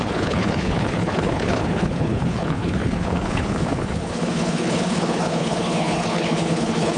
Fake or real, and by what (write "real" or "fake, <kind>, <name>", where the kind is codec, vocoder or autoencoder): fake, codec, HILCodec